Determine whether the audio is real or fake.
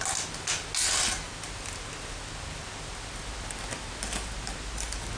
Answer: real